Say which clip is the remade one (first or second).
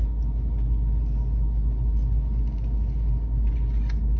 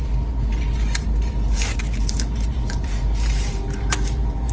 second